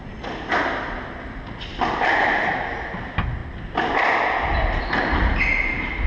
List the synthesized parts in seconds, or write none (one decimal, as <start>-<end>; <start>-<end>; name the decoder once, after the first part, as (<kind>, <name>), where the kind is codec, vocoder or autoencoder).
1.7-2.5 (vocoder, BigVGAN v2)

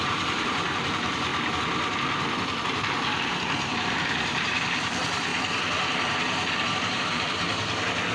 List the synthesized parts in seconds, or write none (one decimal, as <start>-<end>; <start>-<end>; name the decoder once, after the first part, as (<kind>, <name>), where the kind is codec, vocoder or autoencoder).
0.0-1.3 (vocoder, BigVGAN v2); 2.6-5.3; 6.8-8.1